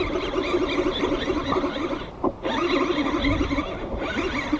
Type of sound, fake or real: real